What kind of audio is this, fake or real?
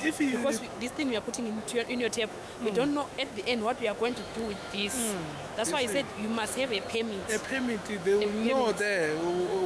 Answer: fake